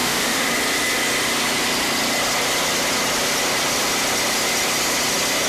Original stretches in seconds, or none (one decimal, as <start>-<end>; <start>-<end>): 0.5-5.5